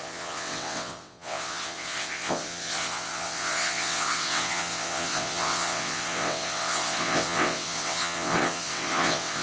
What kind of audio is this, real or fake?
fake